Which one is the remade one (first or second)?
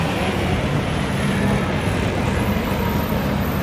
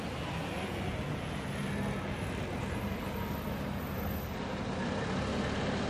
first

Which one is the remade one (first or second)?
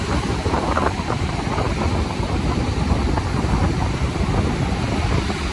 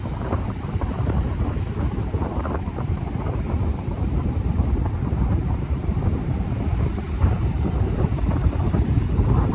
second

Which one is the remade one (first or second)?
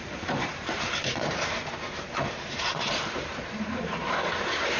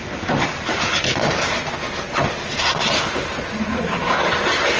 first